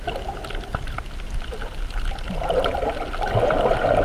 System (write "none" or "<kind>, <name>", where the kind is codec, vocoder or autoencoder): none